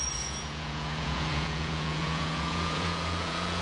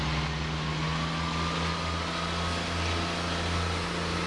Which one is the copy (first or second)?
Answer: first